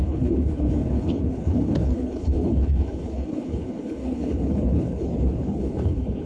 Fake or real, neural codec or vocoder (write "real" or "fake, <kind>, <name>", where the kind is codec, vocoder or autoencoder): fake, codec, HILCodec